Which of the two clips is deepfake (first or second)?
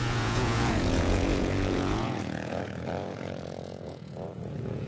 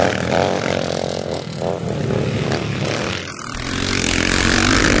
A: first